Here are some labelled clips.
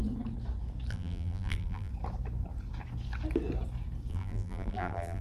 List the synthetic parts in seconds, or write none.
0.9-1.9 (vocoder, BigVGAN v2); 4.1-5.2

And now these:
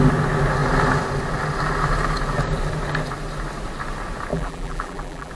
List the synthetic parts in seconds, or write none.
4.3-5.3 (vocoder, BigVGAN v2)

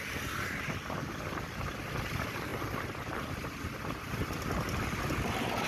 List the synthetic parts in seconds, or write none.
none

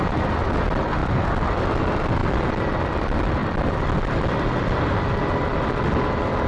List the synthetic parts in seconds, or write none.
1.0-1.8 (vocoder, BigVGAN v2); 2.2-2.8; 3.4-4.9

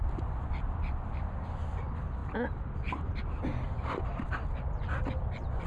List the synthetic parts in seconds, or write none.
none

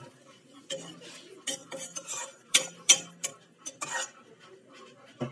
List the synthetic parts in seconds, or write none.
1.6-3.3 (vocoder, BigVGAN v2)

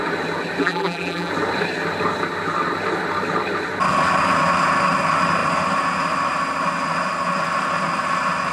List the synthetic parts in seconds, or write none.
0.6-1.3 (vocoder, BigVGAN v2)

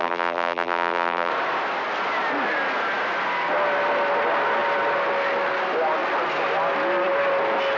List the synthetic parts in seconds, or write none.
0.0-1.3 (vocoder, BigVGAN v2)